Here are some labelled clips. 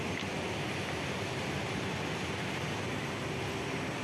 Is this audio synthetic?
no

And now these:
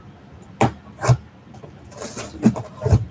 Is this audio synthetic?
no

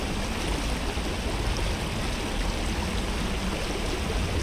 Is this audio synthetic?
no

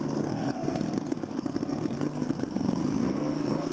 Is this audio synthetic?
yes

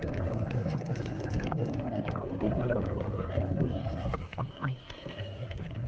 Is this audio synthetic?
yes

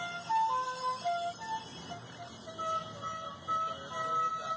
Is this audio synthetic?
no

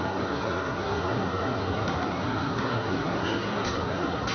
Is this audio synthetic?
yes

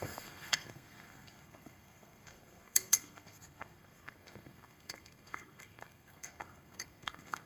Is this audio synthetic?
yes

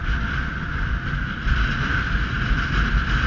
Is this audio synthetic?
no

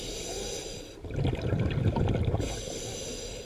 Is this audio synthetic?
no